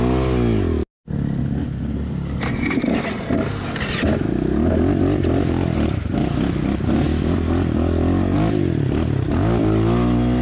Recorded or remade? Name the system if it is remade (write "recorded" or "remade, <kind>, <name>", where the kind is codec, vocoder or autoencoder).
recorded